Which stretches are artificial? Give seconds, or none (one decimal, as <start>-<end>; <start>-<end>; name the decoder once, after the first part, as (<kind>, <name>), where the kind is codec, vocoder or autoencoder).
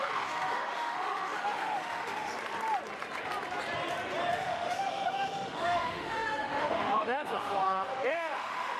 0.0-2.3 (autoencoder, DAC-VAE); 4.3-8.8